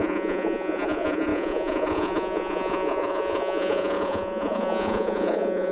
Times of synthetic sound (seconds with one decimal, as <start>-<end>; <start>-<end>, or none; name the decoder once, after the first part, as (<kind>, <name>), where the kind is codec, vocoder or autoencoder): 0.0-5.7 (vocoder, Vocos)